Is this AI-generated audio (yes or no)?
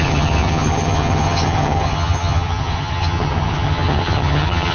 yes